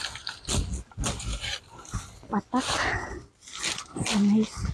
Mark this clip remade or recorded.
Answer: recorded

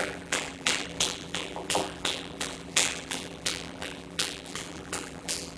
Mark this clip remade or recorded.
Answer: remade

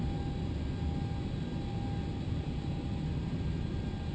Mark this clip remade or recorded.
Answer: recorded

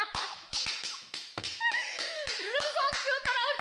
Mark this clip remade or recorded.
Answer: remade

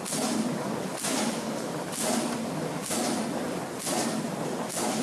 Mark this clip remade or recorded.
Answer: recorded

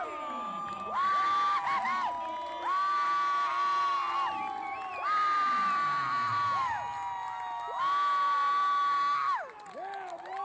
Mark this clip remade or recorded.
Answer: recorded